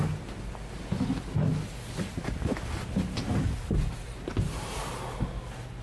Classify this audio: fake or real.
real